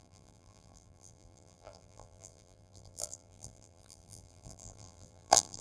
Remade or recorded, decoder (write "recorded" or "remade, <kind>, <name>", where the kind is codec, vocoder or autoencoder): remade, vocoder, BigVGAN v2